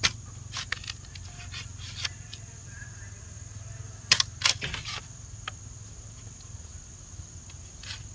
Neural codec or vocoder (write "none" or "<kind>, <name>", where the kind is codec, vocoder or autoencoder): none